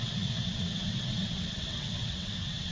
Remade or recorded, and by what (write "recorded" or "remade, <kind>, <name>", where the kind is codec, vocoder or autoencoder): remade, vocoder, WaveNeXt